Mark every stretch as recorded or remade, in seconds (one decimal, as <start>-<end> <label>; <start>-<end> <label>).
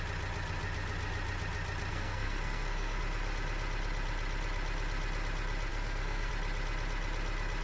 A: 0.0-1.9 recorded; 1.9-3.0 remade; 3.0-5.7 recorded; 5.7-6.3 remade; 6.3-7.6 recorded